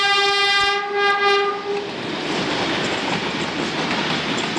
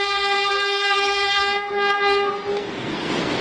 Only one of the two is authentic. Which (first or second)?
first